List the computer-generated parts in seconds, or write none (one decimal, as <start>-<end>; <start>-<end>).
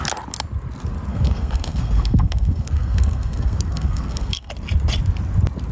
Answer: 1.1-4.5